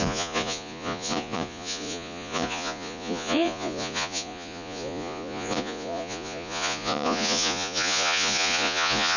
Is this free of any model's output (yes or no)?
no